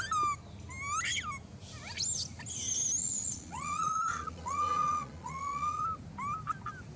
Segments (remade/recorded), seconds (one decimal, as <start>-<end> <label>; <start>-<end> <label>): 0.0-3.0 recorded; 3.0-5.8 remade; 5.8-7.0 recorded